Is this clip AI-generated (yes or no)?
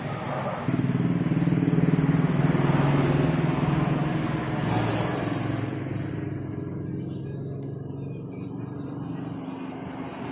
no